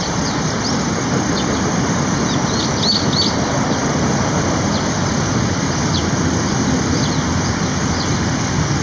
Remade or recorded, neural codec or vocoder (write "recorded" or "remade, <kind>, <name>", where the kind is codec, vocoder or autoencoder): recorded